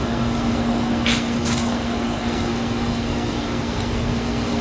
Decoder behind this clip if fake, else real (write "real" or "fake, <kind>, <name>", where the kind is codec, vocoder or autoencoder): fake, codec, SNAC